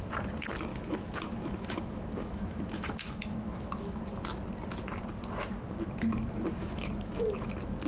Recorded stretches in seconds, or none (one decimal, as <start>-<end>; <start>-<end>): 0.0-0.7; 4.0-6.6; 7.5-7.9